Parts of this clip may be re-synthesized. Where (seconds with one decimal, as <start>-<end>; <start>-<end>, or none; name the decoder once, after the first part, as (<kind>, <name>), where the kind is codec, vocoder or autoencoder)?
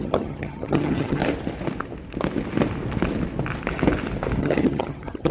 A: 0.0-1.2 (vocoder, HiFi-GAN); 4.4-5.3